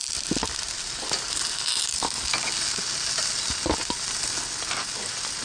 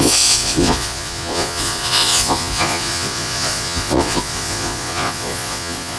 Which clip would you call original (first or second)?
first